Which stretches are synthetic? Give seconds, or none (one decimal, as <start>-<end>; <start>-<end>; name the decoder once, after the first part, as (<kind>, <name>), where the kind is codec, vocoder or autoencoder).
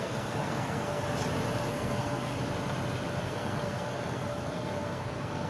0.0-1.0 (codec, SNAC); 1.7-2.3; 3.2-5.5